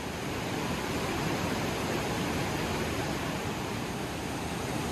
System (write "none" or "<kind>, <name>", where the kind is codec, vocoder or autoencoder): vocoder, BigVGAN v2